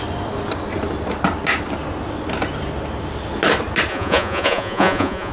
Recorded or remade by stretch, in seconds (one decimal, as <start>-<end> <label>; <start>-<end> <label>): 0.0-3.9 recorded; 3.9-5.3 remade